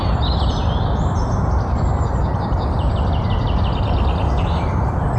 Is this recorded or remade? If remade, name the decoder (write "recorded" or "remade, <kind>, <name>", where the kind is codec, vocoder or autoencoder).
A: remade, vocoder, BigVGAN v2